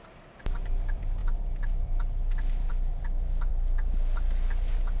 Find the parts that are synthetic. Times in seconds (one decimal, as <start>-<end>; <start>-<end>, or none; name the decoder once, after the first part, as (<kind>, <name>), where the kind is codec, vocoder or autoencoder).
none